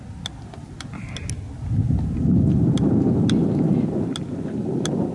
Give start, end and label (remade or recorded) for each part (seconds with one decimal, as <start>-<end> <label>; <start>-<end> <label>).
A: 0.0-5.1 recorded